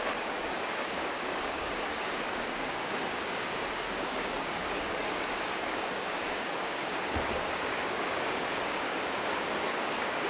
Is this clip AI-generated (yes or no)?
yes